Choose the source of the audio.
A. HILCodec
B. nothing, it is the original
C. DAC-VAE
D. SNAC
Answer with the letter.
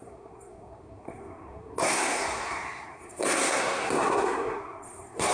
D